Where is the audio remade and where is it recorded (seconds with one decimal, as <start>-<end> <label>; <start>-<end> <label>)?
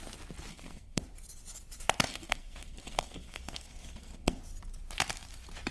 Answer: 0.0-0.5 recorded; 0.5-1.0 remade; 1.0-2.1 recorded; 2.1-4.4 remade; 4.4-5.7 recorded